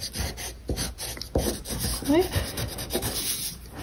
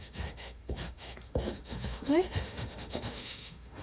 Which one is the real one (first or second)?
first